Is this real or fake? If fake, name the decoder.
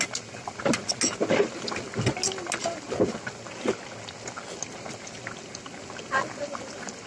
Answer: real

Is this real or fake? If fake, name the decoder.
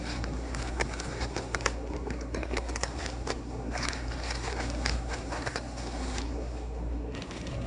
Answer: fake, codec, SNAC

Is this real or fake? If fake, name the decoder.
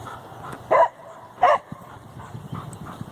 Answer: real